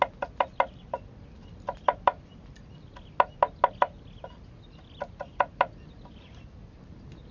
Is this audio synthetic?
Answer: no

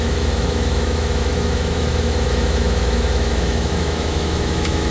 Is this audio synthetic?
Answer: yes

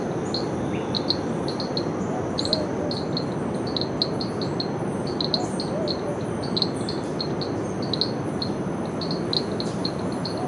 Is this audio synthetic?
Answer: no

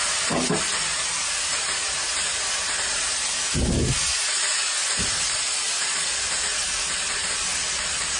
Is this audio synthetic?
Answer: no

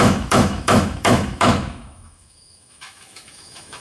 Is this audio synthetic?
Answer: yes